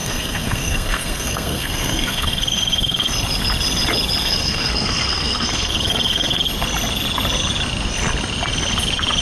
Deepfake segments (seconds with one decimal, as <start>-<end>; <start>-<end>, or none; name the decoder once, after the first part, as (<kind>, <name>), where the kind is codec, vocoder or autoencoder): 0.0-3.1 (codec, SNAC); 4.2-6.4